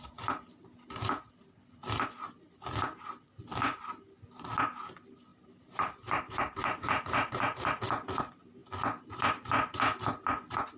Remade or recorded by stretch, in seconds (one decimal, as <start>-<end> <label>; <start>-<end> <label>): 0.0-5.3 recorded; 5.3-7.7 remade; 7.7-10.8 recorded